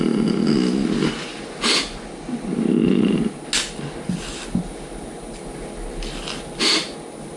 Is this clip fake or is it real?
real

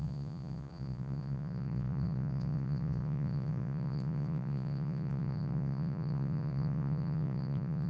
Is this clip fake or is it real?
fake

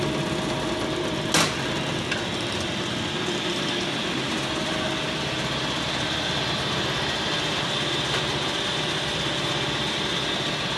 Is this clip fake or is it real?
real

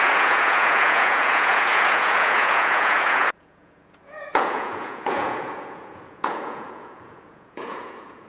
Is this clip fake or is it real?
fake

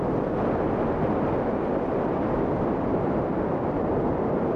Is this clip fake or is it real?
real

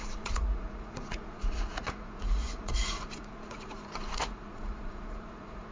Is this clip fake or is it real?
fake